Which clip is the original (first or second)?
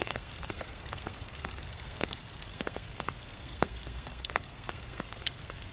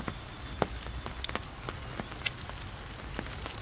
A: second